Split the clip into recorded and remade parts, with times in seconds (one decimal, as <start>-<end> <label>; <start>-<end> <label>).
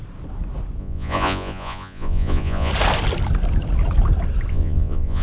0.0-0.8 recorded; 0.8-2.7 remade; 2.7-4.5 recorded; 4.5-5.2 remade